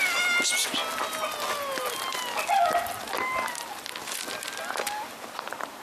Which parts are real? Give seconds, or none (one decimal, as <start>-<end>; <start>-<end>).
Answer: 0.0-2.1